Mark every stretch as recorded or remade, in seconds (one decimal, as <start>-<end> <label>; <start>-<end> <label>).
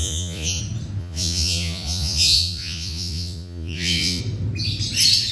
0.0-0.6 remade; 0.6-1.0 recorded; 1.0-4.2 remade; 4.2-5.3 recorded